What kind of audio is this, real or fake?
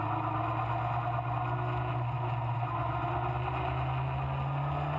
real